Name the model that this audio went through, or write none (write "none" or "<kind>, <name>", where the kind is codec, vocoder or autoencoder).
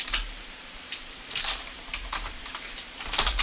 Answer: vocoder, BigVGAN v2